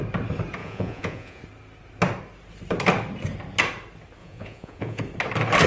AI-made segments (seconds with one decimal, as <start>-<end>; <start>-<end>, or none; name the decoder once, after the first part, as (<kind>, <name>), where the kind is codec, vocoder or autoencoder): 0.6-1.4 (vocoder, Vocos); 4.2-5.0